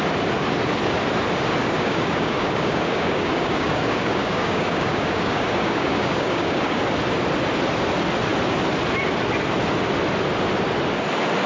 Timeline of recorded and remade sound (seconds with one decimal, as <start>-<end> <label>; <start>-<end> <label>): 0.0-1.6 recorded; 1.6-6.8 remade; 6.8-11.5 recorded